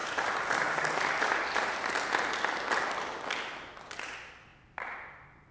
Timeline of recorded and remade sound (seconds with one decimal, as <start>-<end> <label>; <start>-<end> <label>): 0.0-5.5 recorded